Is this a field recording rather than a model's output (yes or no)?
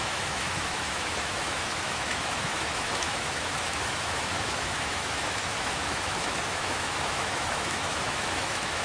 no